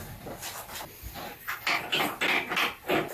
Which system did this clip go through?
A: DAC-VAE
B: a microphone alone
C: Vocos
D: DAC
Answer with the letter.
B